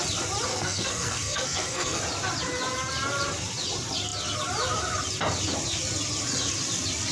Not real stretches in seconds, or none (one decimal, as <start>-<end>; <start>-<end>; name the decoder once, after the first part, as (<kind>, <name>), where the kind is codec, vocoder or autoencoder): 0.5-2.0 (codec, SNAC)